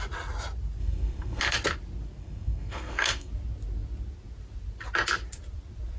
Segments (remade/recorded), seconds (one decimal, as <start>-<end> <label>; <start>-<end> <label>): 0.0-0.8 recorded; 0.8-1.4 remade; 1.4-2.2 recorded; 2.2-3.3 remade; 3.3-6.0 recorded